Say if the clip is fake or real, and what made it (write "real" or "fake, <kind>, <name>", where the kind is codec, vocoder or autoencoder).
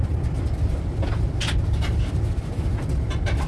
real